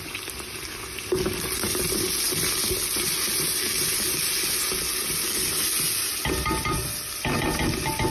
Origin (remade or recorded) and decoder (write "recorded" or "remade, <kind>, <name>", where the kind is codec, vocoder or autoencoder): recorded